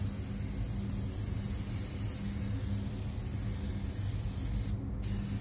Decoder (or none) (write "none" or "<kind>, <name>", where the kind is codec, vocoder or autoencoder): none